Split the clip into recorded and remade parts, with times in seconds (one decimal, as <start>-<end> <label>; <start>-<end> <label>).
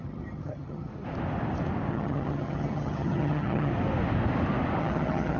0.0-0.9 remade; 0.9-1.9 recorded; 1.9-3.7 remade; 3.7-4.8 recorded; 4.8-5.4 remade